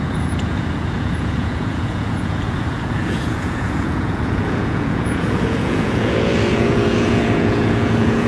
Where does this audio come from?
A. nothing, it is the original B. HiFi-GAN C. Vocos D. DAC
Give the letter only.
C